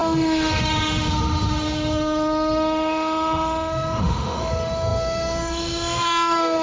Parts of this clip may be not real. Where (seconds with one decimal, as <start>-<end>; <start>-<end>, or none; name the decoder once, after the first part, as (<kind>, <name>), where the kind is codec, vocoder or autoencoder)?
0.0-6.6 (autoencoder, DAC-VAE)